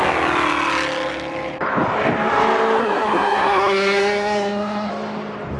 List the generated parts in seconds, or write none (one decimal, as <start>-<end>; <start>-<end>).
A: 2.8-4.9